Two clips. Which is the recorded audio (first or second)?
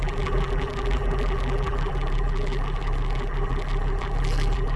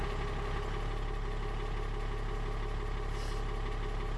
second